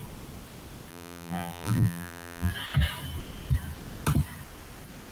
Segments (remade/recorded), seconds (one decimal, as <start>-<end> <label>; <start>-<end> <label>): 0.0-0.9 recorded; 0.9-2.5 remade; 2.5-5.1 recorded